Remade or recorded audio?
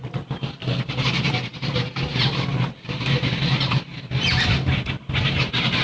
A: recorded